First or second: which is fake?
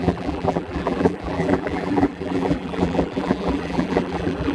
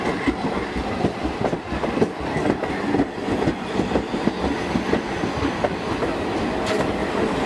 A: first